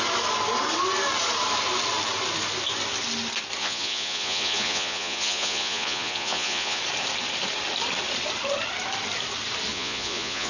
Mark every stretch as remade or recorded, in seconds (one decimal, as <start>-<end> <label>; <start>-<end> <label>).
0.0-3.6 recorded; 3.6-6.8 remade; 6.8-9.7 recorded; 9.7-10.5 remade